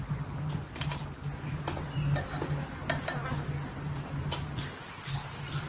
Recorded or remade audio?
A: recorded